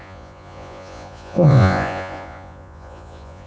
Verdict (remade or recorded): remade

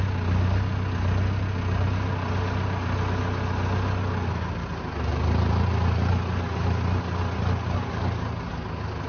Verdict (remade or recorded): recorded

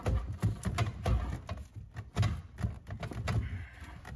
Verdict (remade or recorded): recorded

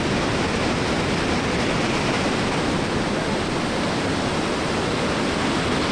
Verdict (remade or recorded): recorded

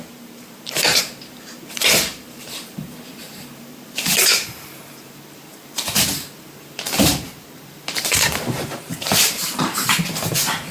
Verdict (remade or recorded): remade